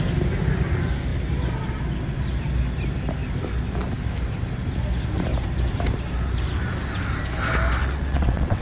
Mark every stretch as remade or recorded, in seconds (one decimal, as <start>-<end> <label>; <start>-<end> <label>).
0.0-7.8 recorded; 7.8-8.6 remade